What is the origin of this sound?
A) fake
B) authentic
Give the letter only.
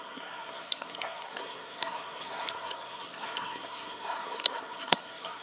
A